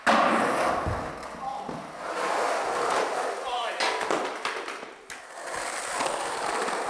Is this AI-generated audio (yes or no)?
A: no